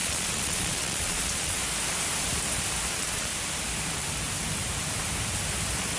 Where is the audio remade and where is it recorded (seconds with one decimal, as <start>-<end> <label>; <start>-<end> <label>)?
0.0-1.6 remade; 1.6-2.9 recorded; 2.9-3.3 remade; 3.3-6.0 recorded